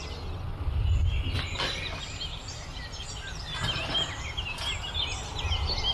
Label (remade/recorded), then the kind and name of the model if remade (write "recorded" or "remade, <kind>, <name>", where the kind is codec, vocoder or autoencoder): recorded